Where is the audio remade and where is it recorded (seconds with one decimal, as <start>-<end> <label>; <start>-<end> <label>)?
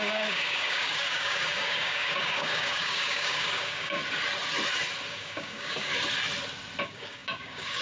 0.0-4.0 remade; 4.0-5.1 recorded; 5.1-5.9 remade; 5.9-6.8 recorded; 6.8-7.8 remade